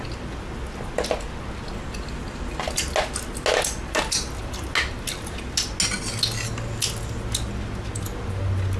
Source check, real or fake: real